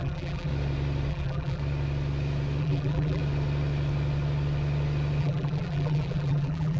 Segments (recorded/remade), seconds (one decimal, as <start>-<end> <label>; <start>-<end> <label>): 0.0-0.5 remade; 0.5-1.1 recorded; 1.1-1.6 remade; 1.6-2.6 recorded; 2.6-3.2 remade; 3.2-5.2 recorded; 5.2-6.8 remade